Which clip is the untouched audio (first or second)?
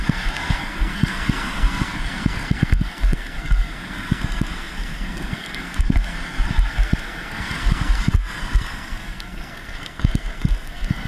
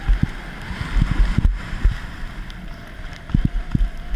second